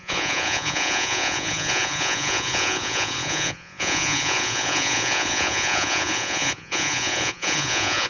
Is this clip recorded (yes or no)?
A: no